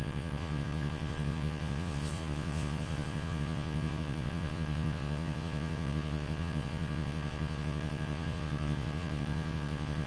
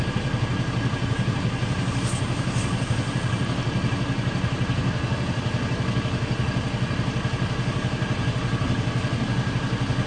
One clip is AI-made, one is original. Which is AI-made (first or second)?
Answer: first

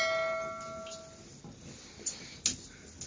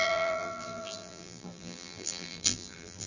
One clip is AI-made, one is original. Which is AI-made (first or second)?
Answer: second